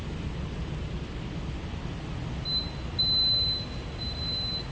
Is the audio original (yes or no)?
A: yes